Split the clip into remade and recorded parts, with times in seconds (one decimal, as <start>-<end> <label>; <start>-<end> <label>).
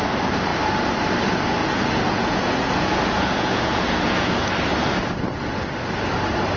0.0-1.6 recorded; 1.6-4.4 remade; 4.4-6.6 recorded